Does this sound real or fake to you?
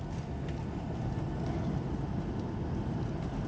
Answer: real